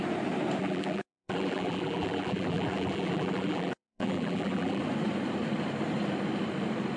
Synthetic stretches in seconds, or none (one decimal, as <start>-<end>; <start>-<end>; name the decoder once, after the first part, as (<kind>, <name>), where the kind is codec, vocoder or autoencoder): 0.6-4.8 (vocoder, BigVGAN v2)